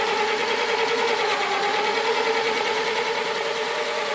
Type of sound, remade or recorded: remade